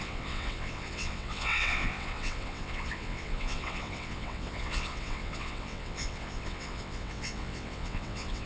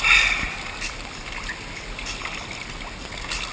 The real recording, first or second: second